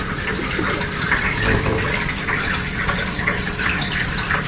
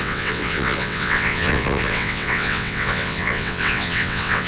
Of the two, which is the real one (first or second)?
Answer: first